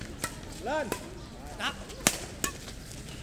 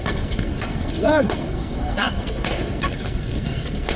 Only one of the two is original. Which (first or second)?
first